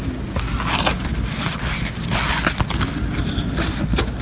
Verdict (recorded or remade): recorded